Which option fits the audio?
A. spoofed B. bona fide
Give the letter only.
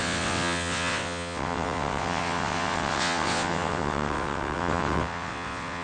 A